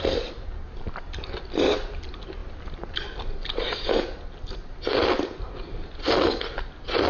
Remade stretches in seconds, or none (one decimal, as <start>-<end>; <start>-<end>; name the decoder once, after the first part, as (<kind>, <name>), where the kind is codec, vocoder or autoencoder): none